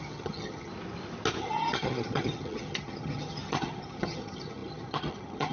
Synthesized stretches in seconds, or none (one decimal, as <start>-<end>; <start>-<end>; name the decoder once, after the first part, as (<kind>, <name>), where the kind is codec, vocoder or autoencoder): 0.0-0.7 (vocoder, HiFi-GAN); 1.4-5.5